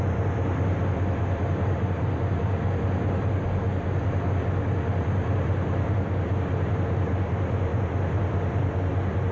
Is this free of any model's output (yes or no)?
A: yes